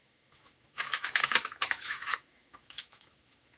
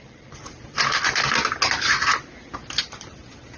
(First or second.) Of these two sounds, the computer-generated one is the first